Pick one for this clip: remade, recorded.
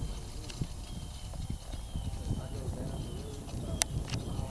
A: recorded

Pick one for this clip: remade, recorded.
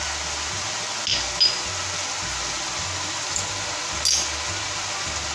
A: recorded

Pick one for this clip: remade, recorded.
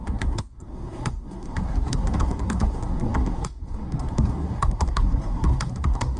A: remade